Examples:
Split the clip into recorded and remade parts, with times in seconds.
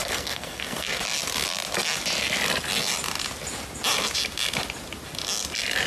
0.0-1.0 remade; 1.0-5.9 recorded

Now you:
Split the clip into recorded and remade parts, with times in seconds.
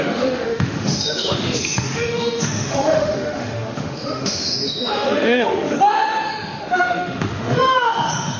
0.0-8.4 remade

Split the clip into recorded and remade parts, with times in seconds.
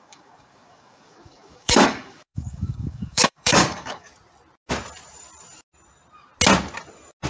0.0-4.1 remade; 4.1-7.3 recorded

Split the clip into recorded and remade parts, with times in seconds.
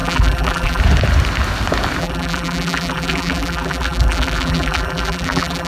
0.0-0.8 remade; 0.8-2.0 recorded; 2.0-5.7 remade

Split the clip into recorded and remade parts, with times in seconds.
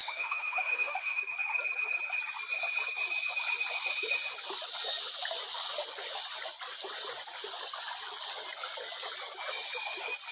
0.0-1.2 remade; 1.2-10.3 recorded